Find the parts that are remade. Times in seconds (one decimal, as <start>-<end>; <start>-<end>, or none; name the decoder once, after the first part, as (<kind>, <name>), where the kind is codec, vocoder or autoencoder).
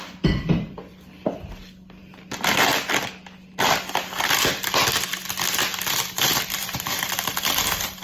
none